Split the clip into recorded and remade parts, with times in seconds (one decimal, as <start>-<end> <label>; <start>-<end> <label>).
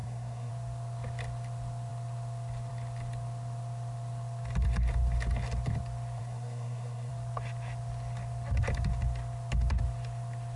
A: 0.0-0.5 remade; 0.5-6.2 recorded; 6.2-7.1 remade; 7.1-10.6 recorded